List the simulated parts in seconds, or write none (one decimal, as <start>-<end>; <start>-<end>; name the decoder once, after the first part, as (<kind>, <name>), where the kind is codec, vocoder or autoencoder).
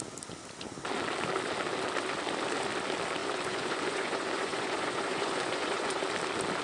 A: 3.2-6.0 (vocoder, Vocos)